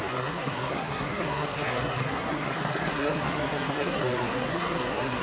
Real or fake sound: fake